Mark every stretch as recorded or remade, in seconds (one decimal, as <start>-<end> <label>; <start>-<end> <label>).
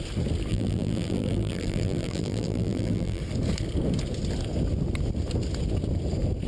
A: 0.0-0.5 recorded; 0.5-3.2 remade; 3.2-6.5 recorded